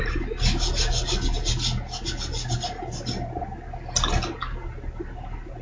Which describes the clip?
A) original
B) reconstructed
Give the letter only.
A